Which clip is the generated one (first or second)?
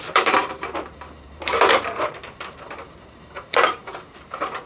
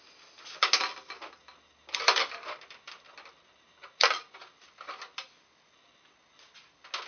first